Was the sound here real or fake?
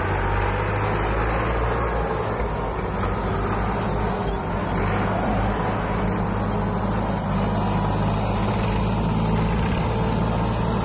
real